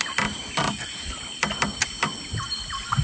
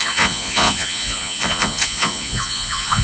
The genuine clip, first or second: first